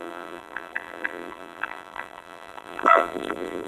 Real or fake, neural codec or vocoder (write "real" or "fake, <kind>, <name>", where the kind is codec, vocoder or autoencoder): fake, vocoder, BigVGAN v2